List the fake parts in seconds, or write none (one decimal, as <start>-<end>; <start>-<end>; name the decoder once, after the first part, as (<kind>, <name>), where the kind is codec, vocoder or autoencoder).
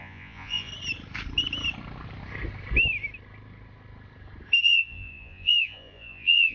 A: 0.0-0.7 (vocoder, Vocos); 4.6-6.5